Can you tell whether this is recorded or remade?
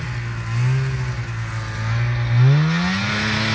recorded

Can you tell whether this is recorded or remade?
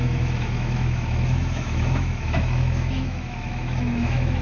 remade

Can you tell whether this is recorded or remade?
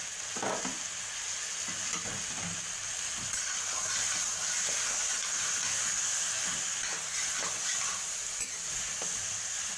recorded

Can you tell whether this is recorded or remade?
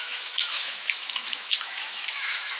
remade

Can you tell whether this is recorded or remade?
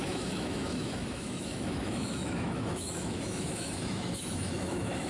remade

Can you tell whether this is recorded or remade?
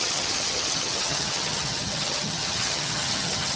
remade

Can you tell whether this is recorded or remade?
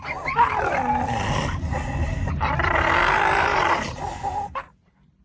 recorded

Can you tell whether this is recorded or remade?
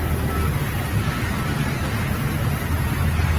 recorded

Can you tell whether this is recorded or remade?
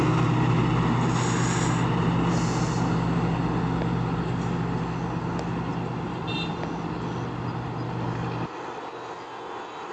recorded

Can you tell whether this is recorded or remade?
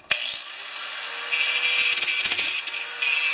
recorded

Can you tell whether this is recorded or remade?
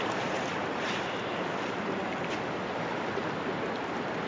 recorded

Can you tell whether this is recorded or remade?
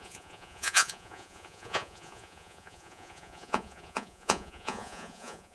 remade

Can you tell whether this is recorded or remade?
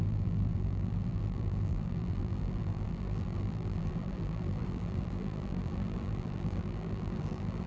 remade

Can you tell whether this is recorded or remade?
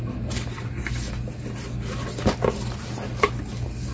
recorded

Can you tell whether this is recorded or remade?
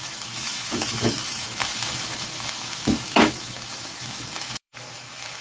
remade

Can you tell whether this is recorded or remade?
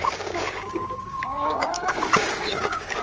remade